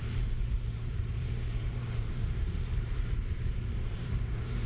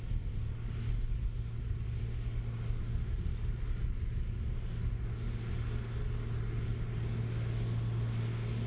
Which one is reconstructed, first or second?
first